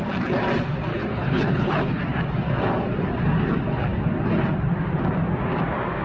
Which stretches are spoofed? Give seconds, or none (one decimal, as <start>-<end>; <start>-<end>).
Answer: 0.9-2.0